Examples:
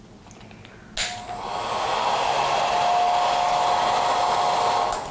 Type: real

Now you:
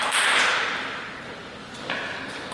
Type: real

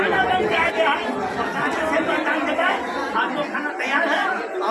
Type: real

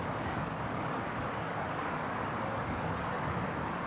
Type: fake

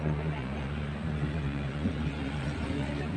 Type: fake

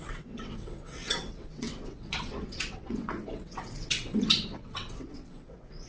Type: fake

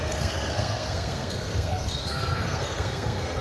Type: fake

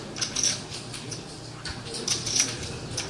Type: real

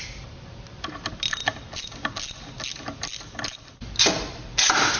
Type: real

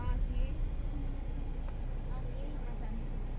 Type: real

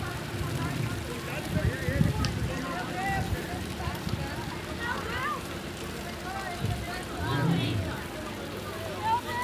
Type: real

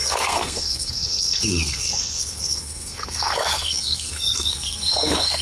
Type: fake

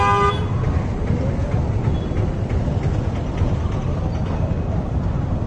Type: real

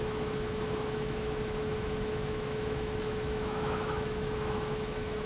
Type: fake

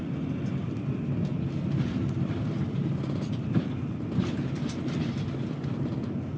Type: fake